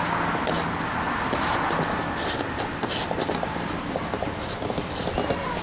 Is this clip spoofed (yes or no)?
no